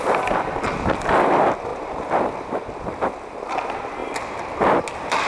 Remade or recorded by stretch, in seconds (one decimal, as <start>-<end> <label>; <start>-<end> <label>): 0.0-1.7 recorded; 1.7-3.5 remade; 3.5-5.3 recorded

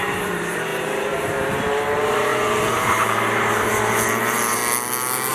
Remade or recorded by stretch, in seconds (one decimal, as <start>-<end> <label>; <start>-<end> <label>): 0.0-4.6 remade; 4.6-5.3 recorded

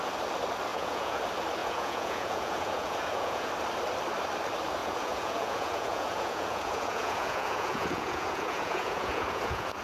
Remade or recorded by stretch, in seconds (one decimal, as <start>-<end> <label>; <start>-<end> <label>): 0.0-0.7 recorded; 0.7-1.2 remade; 1.2-1.6 recorded; 1.6-3.5 remade; 3.5-4.8 recorded; 4.8-9.8 remade